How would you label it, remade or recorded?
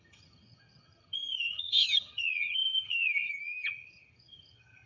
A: remade